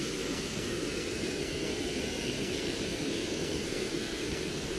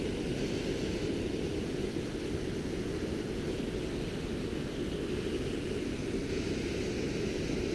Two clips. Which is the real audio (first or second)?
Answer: second